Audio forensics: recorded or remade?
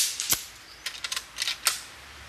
recorded